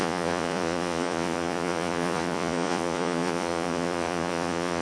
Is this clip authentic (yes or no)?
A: no